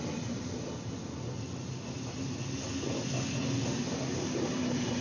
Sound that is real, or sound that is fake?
real